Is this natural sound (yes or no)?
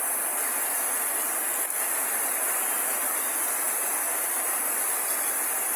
yes